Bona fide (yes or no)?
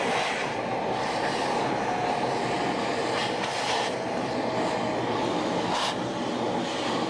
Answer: yes